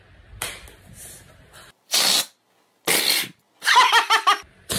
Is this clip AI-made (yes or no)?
no